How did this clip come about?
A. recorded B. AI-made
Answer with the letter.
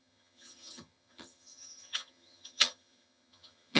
B